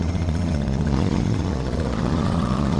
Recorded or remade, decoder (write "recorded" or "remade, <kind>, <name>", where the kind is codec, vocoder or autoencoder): remade, vocoder, Vocos